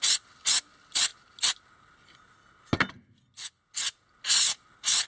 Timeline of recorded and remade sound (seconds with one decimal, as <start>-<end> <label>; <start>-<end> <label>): 0.0-5.1 recorded